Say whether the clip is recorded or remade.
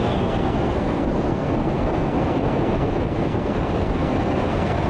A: remade